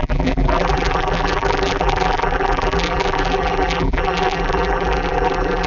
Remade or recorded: remade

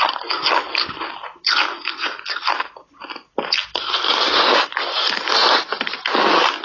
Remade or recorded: recorded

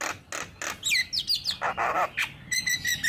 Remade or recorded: recorded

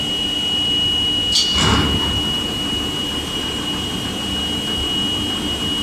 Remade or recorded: recorded